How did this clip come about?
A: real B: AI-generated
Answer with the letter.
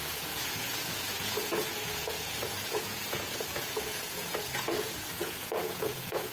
B